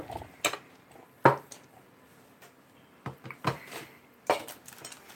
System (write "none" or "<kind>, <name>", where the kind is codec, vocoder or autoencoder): none